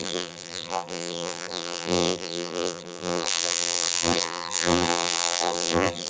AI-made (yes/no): yes